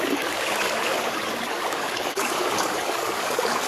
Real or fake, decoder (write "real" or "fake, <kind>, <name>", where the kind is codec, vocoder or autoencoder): fake, codec, DAC